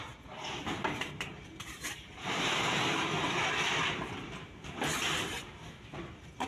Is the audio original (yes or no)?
no